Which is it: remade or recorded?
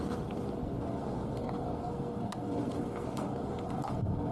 remade